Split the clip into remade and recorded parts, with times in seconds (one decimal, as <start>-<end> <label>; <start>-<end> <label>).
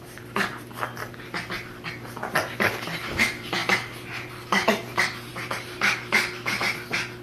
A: 0.0-5.3 recorded; 5.3-6.5 remade; 6.5-7.2 recorded